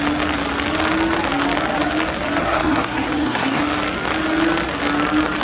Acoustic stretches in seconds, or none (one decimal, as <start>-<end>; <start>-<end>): 0.0-2.4; 3.6-5.4